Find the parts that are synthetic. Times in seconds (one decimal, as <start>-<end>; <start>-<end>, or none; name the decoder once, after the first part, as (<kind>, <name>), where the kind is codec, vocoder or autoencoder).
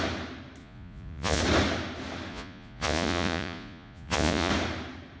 0.6-1.4 (vocoder, Vocos); 2.3-4.5